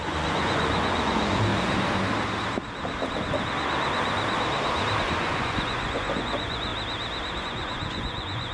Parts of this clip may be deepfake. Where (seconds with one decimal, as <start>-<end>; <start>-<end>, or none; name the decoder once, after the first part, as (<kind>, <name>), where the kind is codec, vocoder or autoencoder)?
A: 0.0-1.5 (vocoder, Vocos); 5.0-6.7; 7.4-8.5